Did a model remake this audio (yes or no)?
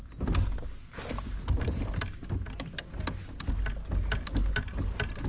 no